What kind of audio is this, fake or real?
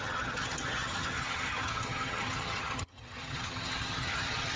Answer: fake